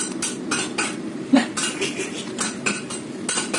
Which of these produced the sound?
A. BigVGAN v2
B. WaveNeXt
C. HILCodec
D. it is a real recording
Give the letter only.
D